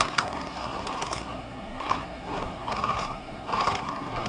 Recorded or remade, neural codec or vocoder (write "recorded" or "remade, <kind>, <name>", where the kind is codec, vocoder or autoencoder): remade, codec, SNAC